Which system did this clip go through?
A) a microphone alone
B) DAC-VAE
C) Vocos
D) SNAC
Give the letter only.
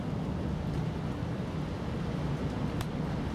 A